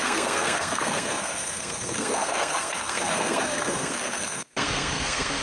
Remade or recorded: remade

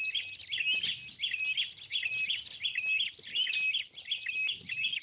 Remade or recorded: recorded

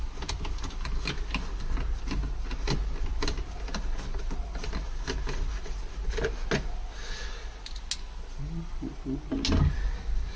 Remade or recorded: recorded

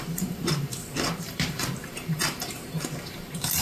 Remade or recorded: remade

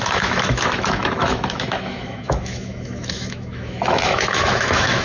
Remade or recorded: remade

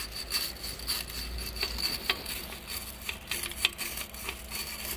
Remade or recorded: recorded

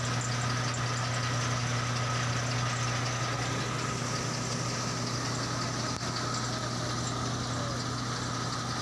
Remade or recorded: recorded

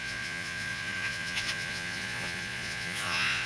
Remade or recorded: remade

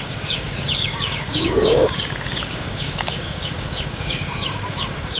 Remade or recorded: remade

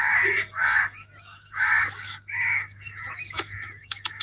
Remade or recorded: remade